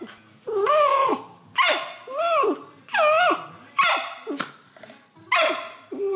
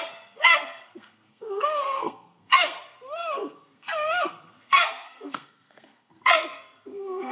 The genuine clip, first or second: first